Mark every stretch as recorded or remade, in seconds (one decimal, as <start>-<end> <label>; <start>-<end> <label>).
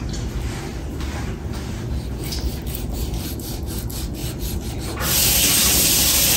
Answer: 0.0-4.2 recorded; 4.2-4.7 remade; 4.7-6.4 recorded